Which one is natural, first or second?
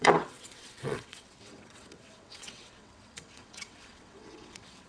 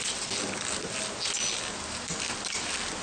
second